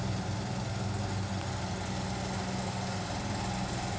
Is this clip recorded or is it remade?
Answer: recorded